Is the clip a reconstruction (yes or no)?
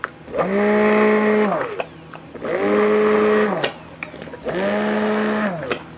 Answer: no